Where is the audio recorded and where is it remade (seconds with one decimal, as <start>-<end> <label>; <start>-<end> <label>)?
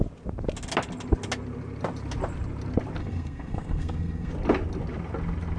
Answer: 0.0-3.0 recorded; 3.0-4.3 remade; 4.3-5.6 recorded